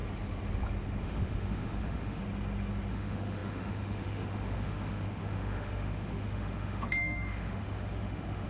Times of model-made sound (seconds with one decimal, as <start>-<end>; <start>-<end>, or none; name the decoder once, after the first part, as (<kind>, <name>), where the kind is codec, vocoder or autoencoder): 1.0-2.2 (autoencoder, DAC-VAE); 2.9-8.5